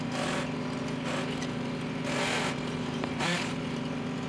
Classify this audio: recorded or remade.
recorded